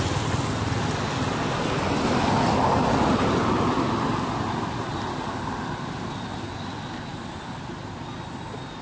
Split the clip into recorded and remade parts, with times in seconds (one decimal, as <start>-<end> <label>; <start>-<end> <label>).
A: 0.0-8.8 recorded